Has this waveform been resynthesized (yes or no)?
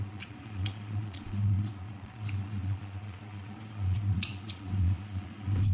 yes